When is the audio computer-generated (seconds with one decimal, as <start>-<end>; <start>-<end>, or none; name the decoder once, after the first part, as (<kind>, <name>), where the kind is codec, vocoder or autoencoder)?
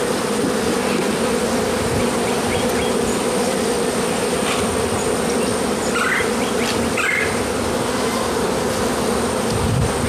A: 5.5-7.4 (vocoder, BigVGAN v2)